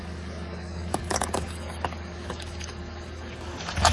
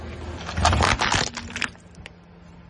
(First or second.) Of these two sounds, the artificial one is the first